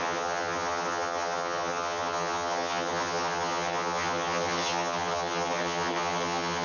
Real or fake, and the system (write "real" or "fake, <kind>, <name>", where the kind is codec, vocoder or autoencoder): fake, vocoder, HiFi-GAN